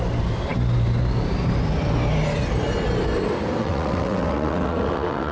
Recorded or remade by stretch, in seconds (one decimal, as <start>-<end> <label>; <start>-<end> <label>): 0.0-3.6 recorded; 3.6-5.3 remade